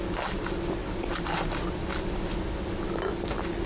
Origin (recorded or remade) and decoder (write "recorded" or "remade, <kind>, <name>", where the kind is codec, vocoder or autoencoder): recorded